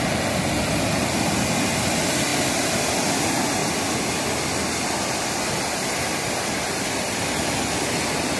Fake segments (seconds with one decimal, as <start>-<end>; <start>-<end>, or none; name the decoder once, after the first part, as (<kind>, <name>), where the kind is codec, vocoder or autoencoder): none

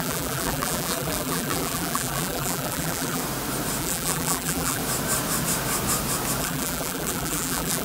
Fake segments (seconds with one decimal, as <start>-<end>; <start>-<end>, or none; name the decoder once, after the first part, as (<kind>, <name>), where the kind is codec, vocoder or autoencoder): 0.0-3.2 (vocoder, BigVGAN v2); 3.8-4.8; 6.4-7.8